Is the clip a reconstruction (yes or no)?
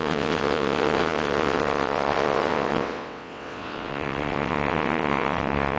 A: yes